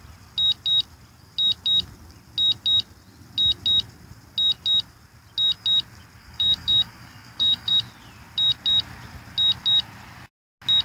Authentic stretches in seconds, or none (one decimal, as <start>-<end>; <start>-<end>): 0.0-6.2; 7.7-10.8